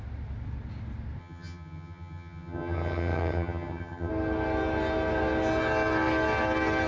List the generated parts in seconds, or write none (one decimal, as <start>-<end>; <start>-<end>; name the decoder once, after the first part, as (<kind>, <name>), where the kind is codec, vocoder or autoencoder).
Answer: 1.2-4.1 (vocoder, HiFi-GAN)